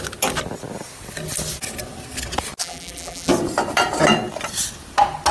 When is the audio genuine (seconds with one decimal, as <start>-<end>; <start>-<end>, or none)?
0.0-2.6; 3.3-5.3